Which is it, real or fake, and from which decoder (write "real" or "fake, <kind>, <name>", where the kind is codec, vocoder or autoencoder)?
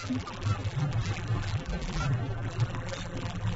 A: fake, vocoder, BigVGAN v2